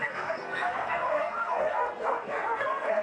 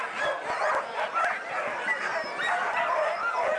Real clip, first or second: second